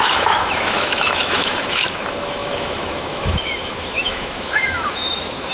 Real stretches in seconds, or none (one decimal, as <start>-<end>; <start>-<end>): none